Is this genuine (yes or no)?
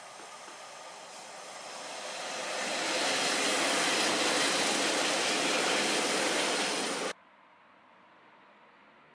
yes